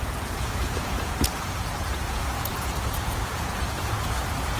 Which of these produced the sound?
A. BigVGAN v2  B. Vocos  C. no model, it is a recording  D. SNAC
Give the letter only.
B